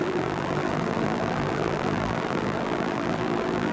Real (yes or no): no